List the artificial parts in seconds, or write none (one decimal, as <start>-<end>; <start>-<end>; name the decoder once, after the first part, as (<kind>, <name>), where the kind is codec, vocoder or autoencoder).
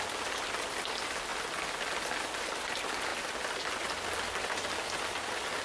none